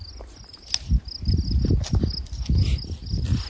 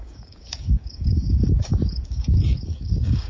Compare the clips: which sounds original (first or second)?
first